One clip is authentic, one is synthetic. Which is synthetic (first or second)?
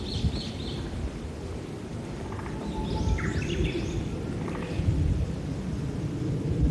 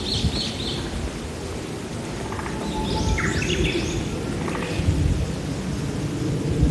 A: first